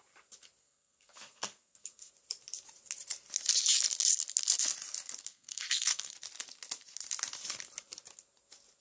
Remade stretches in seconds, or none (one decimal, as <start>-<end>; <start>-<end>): 0.6-2.1; 5.3-6.1

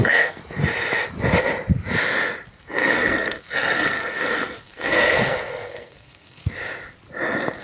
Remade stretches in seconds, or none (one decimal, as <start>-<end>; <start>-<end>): 0.0-0.4; 2.6-6.4

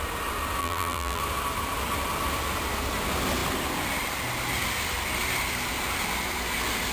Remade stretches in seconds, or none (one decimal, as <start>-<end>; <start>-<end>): 0.6-1.2

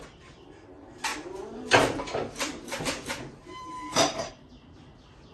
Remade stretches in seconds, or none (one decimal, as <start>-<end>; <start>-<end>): 0.0-5.3